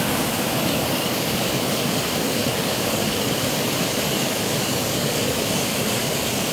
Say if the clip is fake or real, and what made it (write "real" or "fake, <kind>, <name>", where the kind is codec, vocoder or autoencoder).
fake, codec, DAC